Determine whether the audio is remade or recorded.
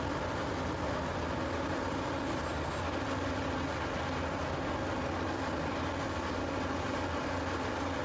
recorded